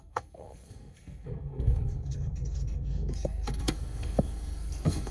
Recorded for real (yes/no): no